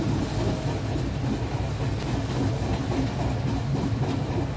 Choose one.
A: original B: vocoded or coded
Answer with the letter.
A